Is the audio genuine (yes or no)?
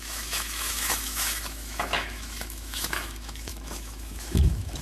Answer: no